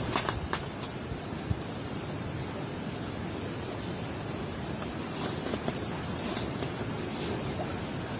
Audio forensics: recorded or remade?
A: recorded